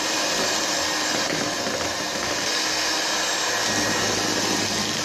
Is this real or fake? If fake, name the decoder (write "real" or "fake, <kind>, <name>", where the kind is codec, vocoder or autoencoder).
real